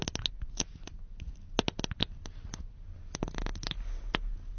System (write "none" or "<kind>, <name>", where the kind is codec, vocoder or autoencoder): none